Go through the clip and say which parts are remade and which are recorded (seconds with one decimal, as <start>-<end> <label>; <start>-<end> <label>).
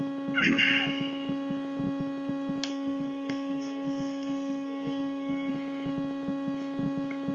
0.0-2.7 recorded; 2.7-5.5 remade; 5.5-7.3 recorded